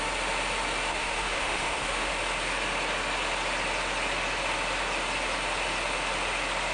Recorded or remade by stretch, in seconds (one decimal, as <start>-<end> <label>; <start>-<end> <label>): 0.0-0.9 recorded; 0.9-2.1 remade; 2.1-6.7 recorded